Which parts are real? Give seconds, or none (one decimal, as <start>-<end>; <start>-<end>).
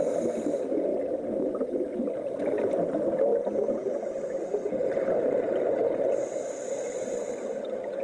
0.0-0.9; 1.6-8.0